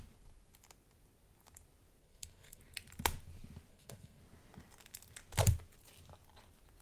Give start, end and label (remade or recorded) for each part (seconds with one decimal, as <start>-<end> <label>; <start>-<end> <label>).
0.0-2.0 recorded; 2.0-2.6 remade; 2.6-3.7 recorded; 3.7-4.2 remade; 4.2-6.8 recorded